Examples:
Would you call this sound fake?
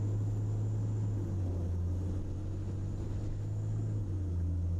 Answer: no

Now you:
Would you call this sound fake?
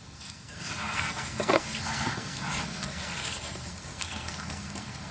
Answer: yes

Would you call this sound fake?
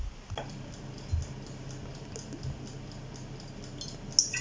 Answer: no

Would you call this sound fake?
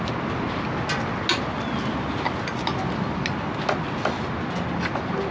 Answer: no